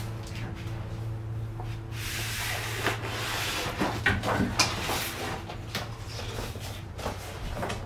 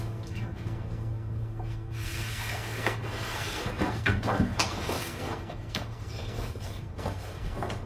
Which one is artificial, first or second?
second